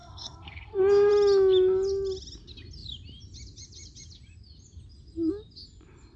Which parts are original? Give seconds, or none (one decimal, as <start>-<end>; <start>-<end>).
1.1-6.2